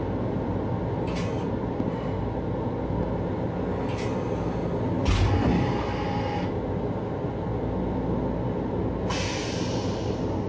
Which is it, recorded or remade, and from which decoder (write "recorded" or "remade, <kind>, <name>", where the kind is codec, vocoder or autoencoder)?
recorded